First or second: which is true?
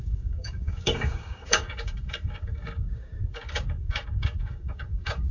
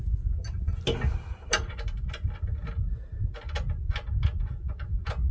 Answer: second